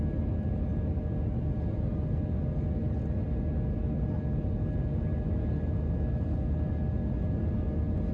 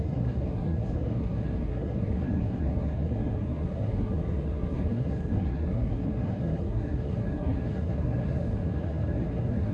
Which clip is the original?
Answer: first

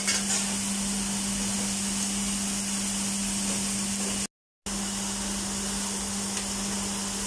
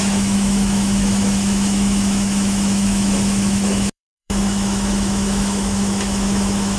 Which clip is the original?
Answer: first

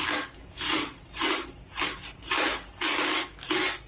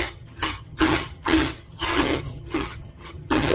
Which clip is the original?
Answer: first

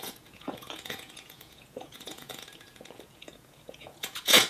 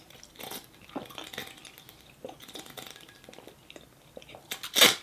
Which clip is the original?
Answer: second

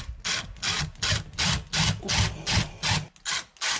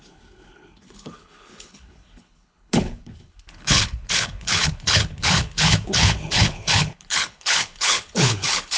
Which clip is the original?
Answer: first